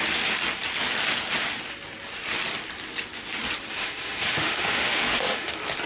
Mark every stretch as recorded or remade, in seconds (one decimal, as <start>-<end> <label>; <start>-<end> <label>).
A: 0.0-3.8 recorded; 3.8-5.5 remade; 5.5-5.9 recorded

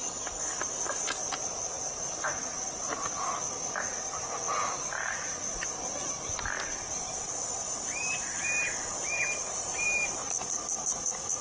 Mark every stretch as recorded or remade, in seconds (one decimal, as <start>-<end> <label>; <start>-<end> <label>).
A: 0.0-11.4 remade